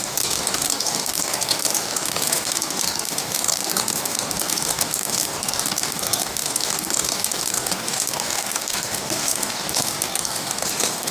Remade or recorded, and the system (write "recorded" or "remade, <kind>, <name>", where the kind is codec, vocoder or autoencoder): remade, codec, DAC